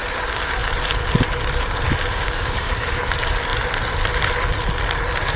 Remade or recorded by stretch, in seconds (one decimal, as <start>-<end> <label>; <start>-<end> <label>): 0.0-2.1 recorded; 2.1-3.0 remade; 3.0-5.4 recorded